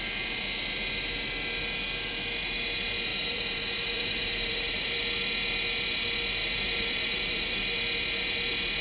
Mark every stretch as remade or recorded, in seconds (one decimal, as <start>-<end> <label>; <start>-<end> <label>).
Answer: 0.0-3.1 recorded; 3.1-4.9 remade; 4.9-6.4 recorded; 6.4-7.6 remade; 7.6-8.8 recorded